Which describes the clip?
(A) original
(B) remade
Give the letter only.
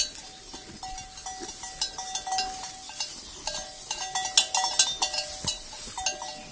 A